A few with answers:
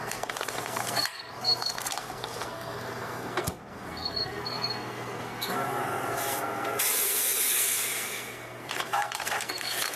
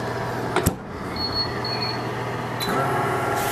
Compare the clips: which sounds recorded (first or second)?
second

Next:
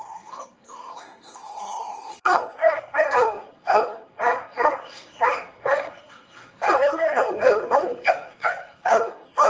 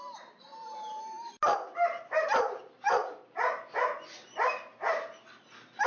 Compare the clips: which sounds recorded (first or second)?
second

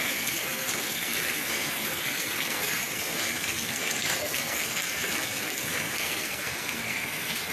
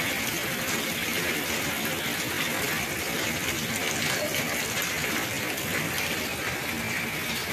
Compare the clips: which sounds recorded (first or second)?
second